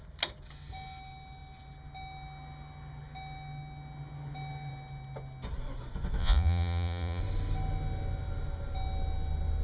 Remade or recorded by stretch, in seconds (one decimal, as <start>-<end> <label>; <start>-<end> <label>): 0.0-6.2 recorded; 6.2-7.2 remade; 7.2-9.6 recorded